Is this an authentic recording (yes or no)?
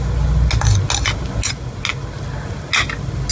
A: yes